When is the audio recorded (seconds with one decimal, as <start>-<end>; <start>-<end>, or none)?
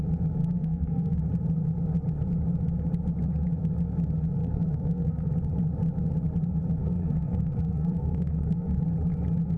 0.0-0.4; 1.2-4.4; 5.3-6.8; 8.8-9.6